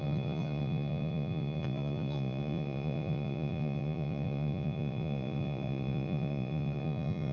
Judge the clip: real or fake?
fake